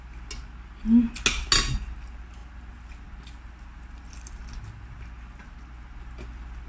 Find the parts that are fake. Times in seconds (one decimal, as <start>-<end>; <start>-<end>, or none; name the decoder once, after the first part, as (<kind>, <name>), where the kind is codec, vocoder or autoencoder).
none